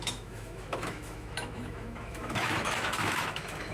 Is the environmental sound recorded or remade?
remade